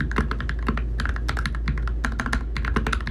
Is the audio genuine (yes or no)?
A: yes